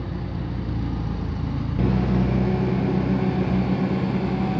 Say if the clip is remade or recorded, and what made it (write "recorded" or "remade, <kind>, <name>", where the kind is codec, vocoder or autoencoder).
recorded